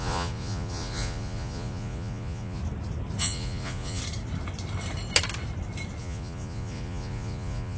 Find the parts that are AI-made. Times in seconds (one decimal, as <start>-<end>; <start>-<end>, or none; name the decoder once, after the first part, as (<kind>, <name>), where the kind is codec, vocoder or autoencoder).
0.0-2.6 (vocoder, Vocos); 3.2-4.0; 6.0-7.8